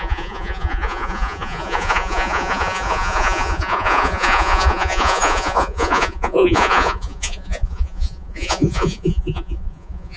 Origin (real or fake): fake